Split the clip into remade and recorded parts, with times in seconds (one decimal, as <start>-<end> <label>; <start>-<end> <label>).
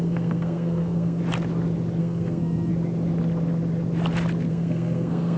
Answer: 0.0-1.2 remade; 1.2-2.0 recorded; 2.0-2.7 remade; 2.7-4.5 recorded; 4.5-5.4 remade